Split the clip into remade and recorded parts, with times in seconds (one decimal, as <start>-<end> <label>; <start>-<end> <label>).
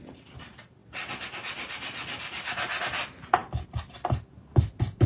0.0-5.1 recorded